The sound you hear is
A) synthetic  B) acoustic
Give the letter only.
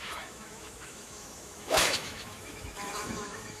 A